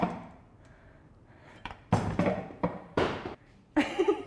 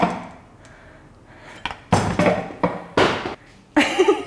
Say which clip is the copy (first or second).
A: first